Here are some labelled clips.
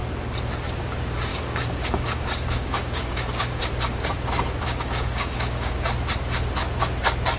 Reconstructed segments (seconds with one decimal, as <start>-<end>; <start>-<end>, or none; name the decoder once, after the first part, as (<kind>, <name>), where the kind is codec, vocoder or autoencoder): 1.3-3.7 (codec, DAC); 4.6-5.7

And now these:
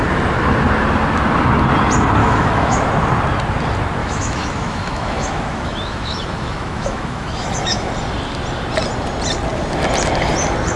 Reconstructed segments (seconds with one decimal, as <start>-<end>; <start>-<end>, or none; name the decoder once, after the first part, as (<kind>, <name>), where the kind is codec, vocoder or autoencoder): 2.2-2.9 (autoencoder, DAC-VAE); 4.0-7.9

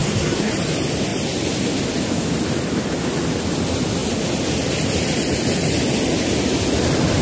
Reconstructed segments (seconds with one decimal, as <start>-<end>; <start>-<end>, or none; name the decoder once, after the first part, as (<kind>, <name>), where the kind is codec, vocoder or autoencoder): 0.0-0.5 (codec, SNAC)